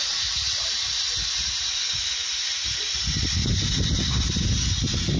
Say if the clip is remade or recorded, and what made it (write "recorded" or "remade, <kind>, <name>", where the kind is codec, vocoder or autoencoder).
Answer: recorded